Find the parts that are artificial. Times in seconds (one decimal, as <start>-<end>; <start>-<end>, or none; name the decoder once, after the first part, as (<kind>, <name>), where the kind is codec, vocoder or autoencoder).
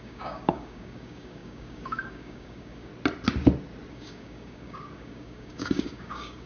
0.0-2.9 (codec, DAC); 3.9-6.5